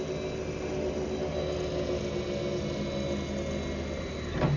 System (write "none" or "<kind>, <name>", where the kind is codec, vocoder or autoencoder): none